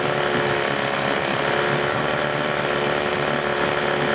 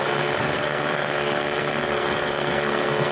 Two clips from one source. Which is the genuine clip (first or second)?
first